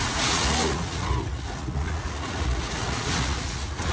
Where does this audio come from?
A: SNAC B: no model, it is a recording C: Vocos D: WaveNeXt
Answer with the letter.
C